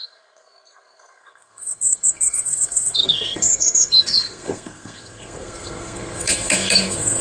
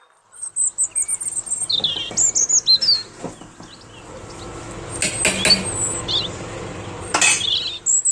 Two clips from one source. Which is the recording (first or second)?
second